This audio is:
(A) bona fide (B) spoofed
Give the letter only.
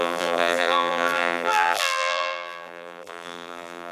B